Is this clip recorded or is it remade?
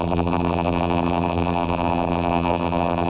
remade